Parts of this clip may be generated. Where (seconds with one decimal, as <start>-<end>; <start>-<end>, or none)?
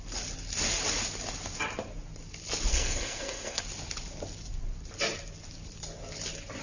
2.7-3.6